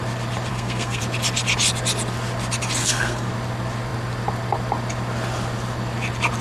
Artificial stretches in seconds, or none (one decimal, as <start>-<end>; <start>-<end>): 0.5-1.0; 2.8-3.3